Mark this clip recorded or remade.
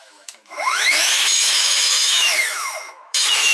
remade